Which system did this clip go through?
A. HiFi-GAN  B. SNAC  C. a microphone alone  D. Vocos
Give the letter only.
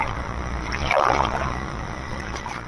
D